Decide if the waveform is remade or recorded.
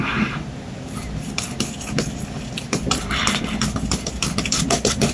remade